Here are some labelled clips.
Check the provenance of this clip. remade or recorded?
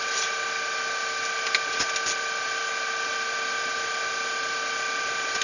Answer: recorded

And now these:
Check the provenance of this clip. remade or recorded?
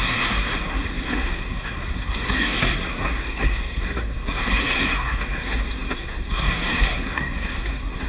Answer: remade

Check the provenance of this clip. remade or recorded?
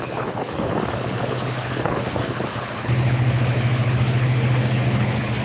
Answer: remade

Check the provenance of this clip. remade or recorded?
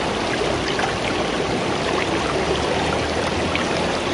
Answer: recorded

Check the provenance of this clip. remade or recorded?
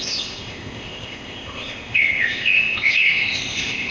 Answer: remade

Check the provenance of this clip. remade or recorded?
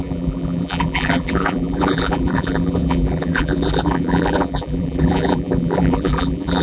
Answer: remade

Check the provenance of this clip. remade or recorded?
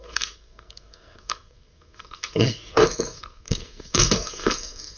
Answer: remade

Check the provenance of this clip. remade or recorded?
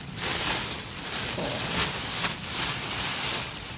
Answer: remade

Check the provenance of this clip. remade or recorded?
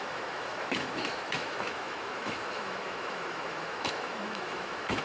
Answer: remade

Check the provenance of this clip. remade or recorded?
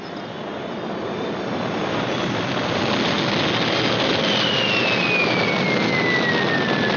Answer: recorded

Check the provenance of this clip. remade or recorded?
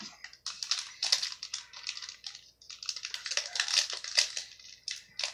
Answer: recorded